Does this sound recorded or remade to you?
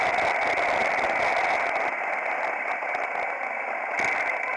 recorded